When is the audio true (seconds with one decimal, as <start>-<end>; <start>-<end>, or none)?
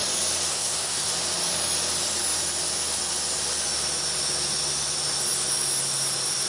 0.0-0.5; 1.1-6.5